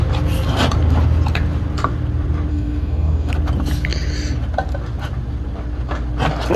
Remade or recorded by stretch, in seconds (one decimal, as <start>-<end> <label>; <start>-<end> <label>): 0.0-2.5 recorded; 2.5-3.3 remade; 3.3-6.6 recorded